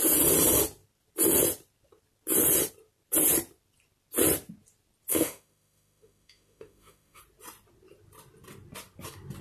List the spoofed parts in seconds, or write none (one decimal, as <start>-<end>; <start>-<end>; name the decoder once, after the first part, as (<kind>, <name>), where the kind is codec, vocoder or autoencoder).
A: 5.1-7.2 (autoencoder, DAC-VAE)